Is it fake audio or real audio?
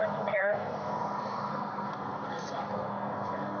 fake